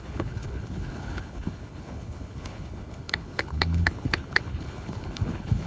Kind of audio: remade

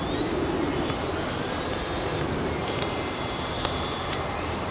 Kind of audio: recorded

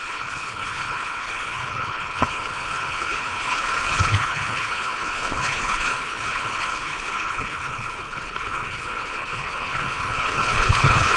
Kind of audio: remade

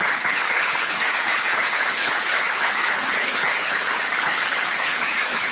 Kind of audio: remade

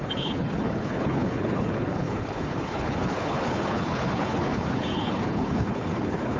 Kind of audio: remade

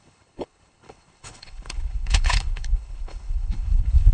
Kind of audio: remade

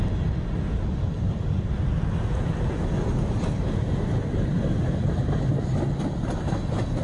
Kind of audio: recorded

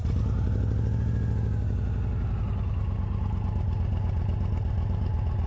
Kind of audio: recorded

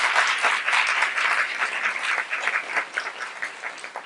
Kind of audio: recorded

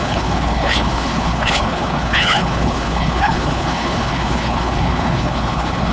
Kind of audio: remade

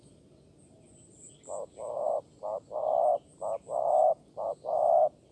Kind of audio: recorded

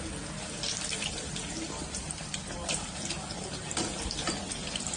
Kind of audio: recorded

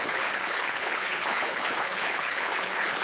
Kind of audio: remade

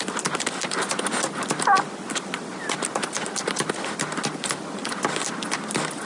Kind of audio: recorded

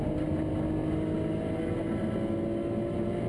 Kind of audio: recorded